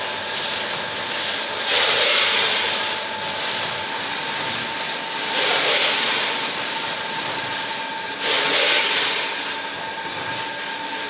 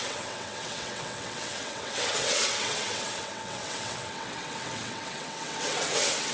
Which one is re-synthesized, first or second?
second